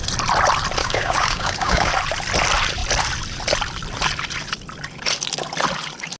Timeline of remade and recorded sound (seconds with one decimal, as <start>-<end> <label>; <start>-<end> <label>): 0.0-0.8 recorded; 0.8-1.9 remade; 1.9-6.2 recorded